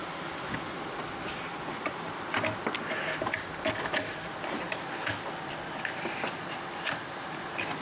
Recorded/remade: recorded